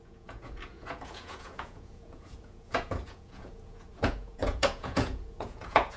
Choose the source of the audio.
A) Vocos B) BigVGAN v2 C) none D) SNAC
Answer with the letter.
A